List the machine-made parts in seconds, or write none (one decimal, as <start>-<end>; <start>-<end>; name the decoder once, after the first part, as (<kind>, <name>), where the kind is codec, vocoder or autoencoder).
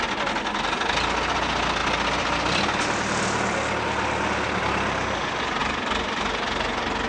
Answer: none